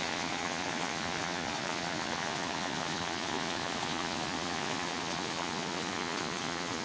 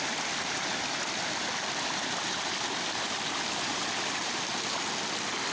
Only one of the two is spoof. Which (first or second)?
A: first